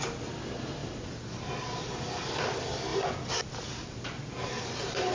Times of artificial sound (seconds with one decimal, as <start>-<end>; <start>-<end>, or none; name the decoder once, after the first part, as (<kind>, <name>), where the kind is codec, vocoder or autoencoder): 0.8-1.5 (vocoder, BigVGAN v2); 2.9-4.5